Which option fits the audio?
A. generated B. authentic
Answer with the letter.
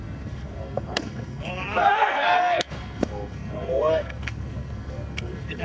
A